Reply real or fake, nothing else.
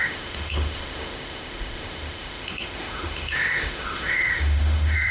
fake